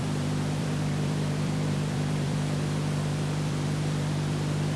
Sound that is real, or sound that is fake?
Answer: fake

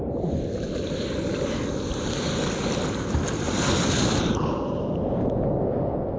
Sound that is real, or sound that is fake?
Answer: real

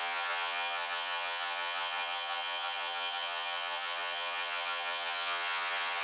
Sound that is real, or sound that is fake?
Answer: fake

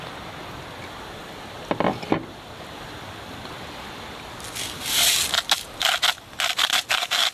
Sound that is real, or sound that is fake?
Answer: real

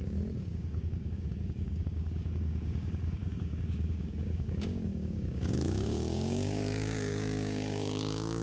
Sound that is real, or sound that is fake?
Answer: fake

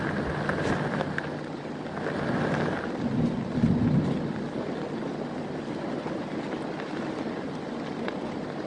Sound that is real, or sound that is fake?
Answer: real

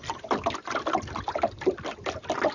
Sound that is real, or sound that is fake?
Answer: real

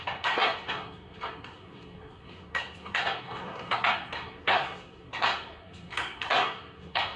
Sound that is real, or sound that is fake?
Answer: fake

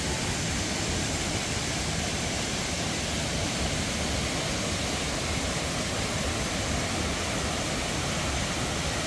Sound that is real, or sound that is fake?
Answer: fake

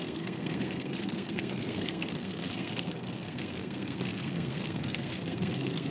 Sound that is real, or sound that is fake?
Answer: fake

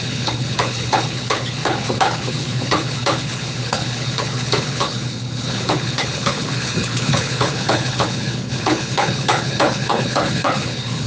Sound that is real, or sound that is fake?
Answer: fake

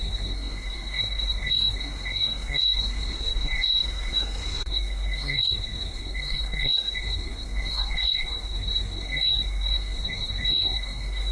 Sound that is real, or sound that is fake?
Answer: fake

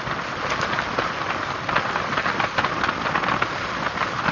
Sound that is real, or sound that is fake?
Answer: real